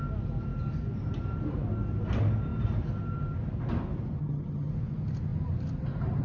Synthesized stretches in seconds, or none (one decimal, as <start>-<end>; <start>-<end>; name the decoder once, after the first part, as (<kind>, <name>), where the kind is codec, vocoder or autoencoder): 4.2-4.7 (vocoder, HiFi-GAN)